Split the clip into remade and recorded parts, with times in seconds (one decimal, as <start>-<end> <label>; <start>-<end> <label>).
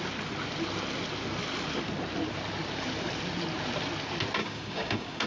0.0-4.4 recorded; 4.4-5.3 remade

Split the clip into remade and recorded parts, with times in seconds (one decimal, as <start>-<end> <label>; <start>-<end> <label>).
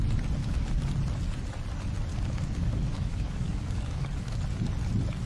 0.0-0.4 recorded; 0.4-0.9 remade; 0.9-2.1 recorded; 2.1-4.4 remade; 4.4-5.3 recorded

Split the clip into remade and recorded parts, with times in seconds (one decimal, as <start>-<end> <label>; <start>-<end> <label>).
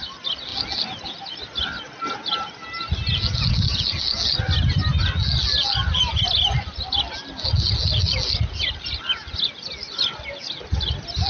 0.0-11.3 recorded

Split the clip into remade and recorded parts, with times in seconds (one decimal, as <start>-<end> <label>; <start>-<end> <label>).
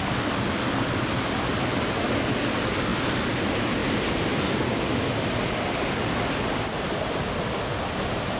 0.0-8.4 recorded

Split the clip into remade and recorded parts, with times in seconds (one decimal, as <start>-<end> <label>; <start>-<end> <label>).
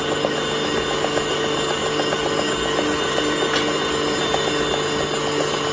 0.0-5.7 recorded